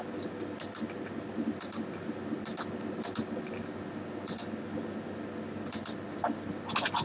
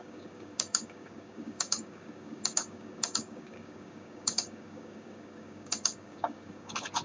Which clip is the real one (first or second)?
first